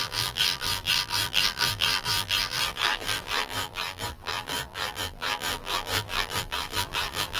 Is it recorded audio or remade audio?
remade